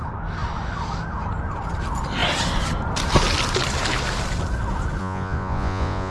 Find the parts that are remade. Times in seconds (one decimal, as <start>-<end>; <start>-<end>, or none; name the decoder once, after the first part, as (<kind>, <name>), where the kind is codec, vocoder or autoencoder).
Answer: 5.0-6.1 (vocoder, Vocos)

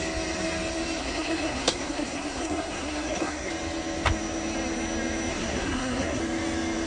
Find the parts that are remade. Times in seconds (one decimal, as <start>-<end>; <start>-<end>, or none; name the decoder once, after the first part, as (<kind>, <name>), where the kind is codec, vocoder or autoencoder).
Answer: 1.0-3.5 (codec, SNAC); 5.3-6.2

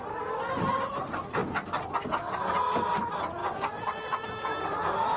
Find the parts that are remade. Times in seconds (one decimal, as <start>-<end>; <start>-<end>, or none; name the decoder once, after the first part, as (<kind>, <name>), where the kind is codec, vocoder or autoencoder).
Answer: none

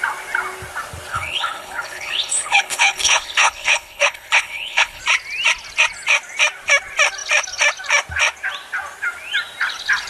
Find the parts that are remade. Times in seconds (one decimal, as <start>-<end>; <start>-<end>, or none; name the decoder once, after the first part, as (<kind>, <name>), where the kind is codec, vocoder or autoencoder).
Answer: 1.1-5.0 (codec, HILCodec)

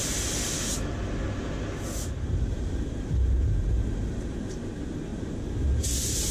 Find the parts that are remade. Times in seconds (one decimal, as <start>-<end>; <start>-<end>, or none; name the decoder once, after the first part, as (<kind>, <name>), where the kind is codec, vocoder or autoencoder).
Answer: 2.2-6.3 (vocoder, BigVGAN v2)

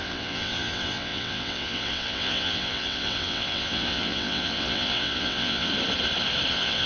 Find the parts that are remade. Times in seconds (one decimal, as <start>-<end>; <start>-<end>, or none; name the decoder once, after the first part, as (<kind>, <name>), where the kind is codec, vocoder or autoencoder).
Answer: 0.0-5.7 (vocoder, WaveNeXt); 6.5-6.9

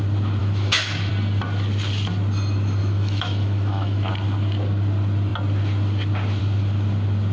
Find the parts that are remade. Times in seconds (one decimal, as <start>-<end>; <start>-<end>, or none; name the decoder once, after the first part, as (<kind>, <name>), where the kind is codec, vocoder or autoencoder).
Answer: 0.4-1.1 (autoencoder, DAC-VAE); 2.8-4.1